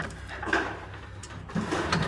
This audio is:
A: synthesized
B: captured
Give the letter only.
A